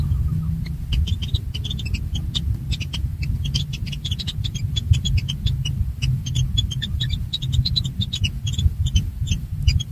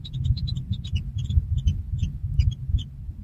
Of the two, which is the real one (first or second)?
second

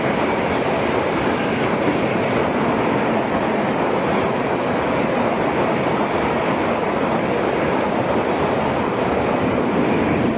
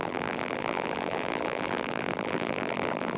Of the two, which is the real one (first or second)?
first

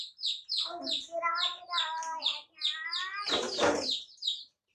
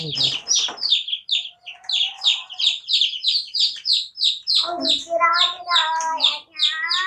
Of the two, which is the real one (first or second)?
second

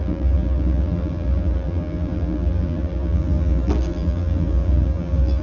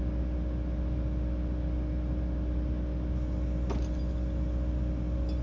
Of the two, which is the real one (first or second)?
second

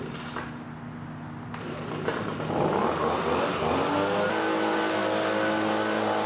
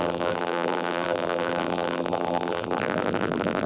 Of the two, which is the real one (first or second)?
first